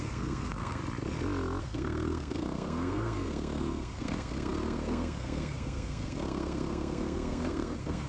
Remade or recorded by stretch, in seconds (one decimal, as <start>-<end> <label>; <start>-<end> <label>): 0.0-0.8 remade; 0.8-1.6 recorded; 1.6-8.1 remade